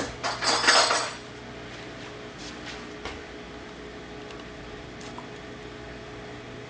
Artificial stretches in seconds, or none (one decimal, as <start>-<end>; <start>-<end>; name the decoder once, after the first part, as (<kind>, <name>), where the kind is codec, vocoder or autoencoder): none